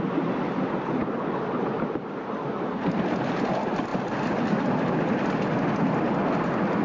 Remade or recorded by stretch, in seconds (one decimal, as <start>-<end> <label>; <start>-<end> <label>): 0.0-6.8 recorded